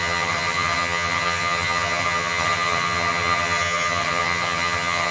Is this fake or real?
fake